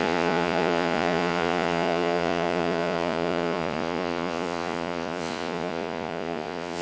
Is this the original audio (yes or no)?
no